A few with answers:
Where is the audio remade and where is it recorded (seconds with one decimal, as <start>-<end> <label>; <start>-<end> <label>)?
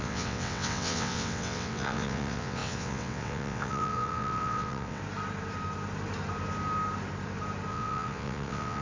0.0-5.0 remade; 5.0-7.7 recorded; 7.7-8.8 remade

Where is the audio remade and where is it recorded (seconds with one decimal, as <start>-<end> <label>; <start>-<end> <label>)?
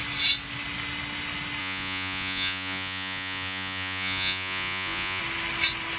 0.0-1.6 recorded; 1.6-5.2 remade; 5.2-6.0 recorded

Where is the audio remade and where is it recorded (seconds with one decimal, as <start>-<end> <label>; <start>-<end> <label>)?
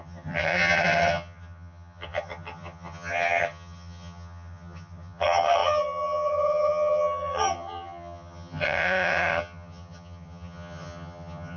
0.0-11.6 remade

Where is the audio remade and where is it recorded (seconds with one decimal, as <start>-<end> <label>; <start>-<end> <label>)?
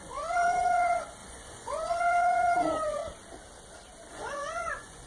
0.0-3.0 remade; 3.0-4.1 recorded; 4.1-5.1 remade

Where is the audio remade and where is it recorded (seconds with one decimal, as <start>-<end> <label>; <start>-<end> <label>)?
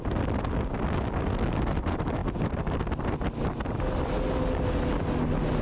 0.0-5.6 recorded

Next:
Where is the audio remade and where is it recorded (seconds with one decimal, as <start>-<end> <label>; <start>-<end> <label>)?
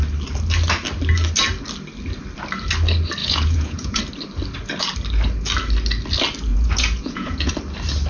0.0-3.2 recorded; 3.2-4.0 remade; 4.0-6.5 recorded; 6.5-7.5 remade; 7.5-8.1 recorded